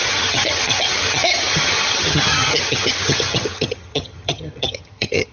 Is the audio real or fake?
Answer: fake